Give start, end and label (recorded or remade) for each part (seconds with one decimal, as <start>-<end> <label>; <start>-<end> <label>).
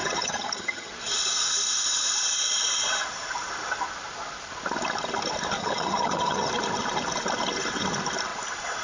0.0-0.9 remade; 0.9-5.6 recorded; 5.6-6.5 remade; 6.5-8.8 recorded